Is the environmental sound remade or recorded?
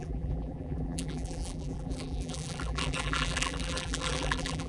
remade